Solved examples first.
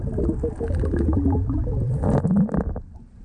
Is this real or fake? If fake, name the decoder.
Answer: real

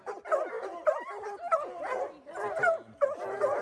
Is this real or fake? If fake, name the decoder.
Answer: fake, vocoder, BigVGAN v2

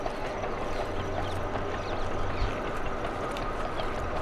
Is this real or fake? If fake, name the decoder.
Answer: real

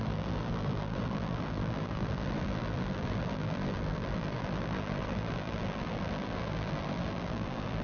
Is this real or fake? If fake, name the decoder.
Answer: fake, vocoder, BigVGAN v2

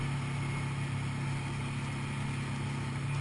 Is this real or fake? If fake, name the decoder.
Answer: real